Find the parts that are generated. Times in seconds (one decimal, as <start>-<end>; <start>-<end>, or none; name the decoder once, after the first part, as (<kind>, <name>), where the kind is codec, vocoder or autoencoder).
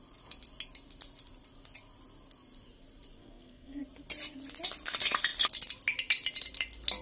3.2-3.8 (codec, SNAC)